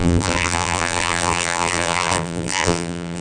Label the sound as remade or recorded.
remade